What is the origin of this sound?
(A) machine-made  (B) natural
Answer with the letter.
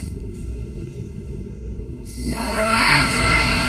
A